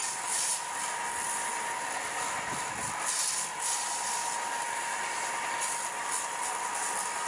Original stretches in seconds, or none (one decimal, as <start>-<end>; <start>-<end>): 0.0-7.3